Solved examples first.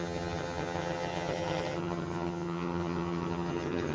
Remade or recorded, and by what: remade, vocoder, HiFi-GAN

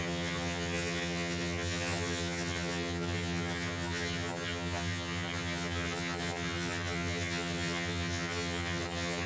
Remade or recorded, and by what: remade, vocoder, HiFi-GAN